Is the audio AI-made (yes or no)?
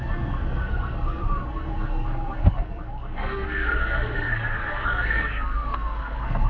yes